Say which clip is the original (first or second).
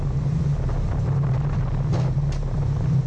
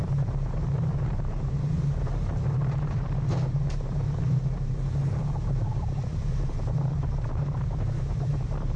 first